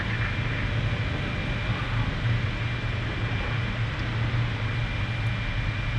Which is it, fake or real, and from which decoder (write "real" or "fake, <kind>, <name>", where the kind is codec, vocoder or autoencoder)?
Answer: real